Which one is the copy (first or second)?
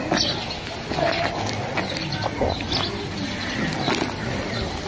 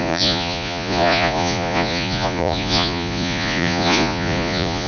second